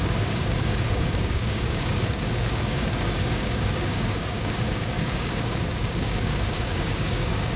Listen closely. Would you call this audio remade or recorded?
remade